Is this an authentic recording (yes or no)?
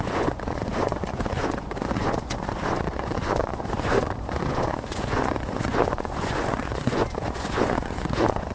no